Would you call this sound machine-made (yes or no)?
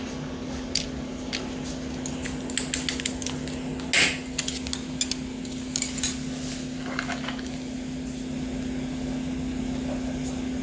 no